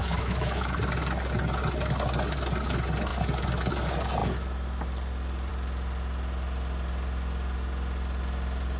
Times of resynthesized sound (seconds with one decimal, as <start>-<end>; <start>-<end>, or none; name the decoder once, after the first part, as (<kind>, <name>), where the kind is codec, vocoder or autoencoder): 0.0-0.8 (autoencoder, DAC-VAE)

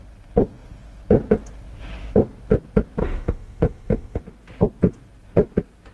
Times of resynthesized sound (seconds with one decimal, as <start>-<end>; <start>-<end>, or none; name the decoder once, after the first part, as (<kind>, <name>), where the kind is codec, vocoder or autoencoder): 3.0-4.2 (autoencoder, DAC-VAE)